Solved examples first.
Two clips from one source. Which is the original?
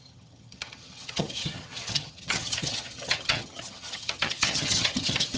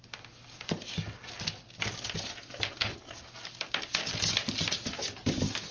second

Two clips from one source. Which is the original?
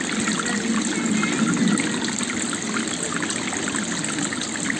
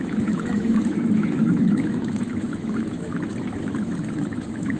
first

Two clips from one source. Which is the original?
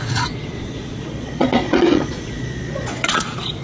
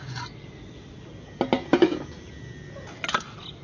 second